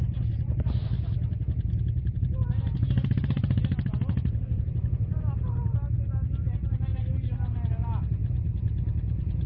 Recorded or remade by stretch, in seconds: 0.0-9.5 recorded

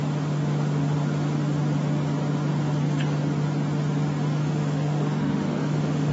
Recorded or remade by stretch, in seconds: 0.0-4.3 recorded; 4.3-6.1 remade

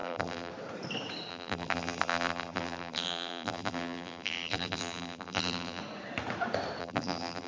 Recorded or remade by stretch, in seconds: 0.0-0.5 remade; 0.5-1.3 recorded; 1.3-5.8 remade; 5.8-6.8 recorded; 6.8-7.5 remade

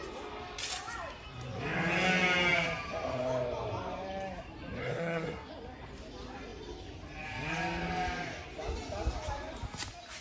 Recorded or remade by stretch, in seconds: 0.0-4.8 recorded; 4.8-5.5 remade; 5.5-10.2 recorded